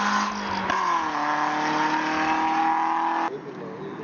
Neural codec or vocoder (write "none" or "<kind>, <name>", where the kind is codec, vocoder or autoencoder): none